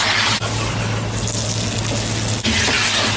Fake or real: real